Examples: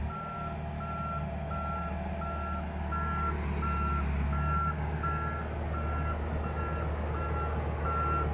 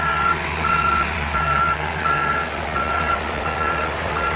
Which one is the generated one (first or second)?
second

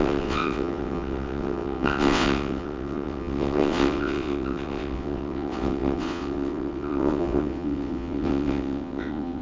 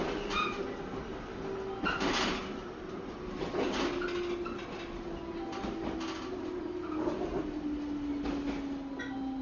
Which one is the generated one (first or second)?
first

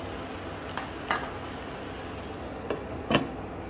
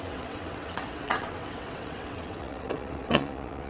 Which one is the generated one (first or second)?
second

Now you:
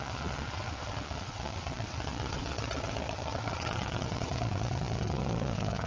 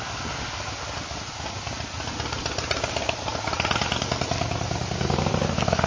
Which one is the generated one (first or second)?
first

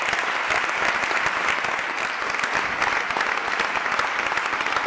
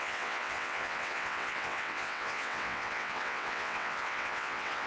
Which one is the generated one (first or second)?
second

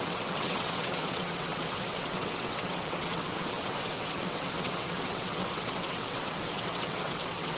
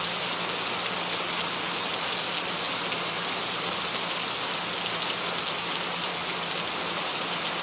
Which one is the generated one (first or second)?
first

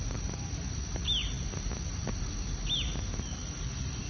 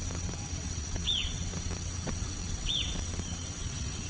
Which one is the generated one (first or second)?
second